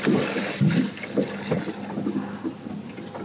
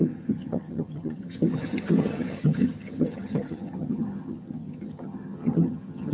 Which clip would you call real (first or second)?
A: first